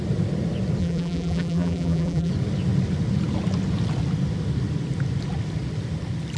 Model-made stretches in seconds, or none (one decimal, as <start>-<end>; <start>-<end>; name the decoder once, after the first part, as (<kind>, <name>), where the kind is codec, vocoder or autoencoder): 0.8-2.3 (vocoder, BigVGAN v2)